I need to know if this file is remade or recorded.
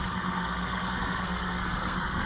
remade